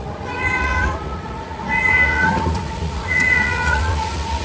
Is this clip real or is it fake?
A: fake